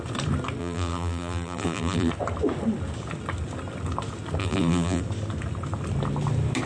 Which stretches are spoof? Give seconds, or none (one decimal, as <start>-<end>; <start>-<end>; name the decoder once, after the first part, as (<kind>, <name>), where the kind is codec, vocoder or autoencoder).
0.6-2.1 (vocoder, BigVGAN v2); 4.4-5.0